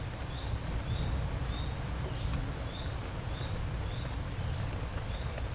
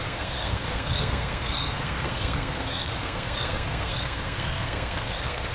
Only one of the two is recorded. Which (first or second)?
first